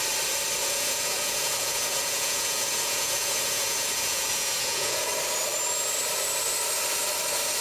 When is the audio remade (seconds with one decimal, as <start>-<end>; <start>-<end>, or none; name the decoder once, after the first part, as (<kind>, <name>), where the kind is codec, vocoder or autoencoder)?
0.6-5.1 (vocoder, Vocos)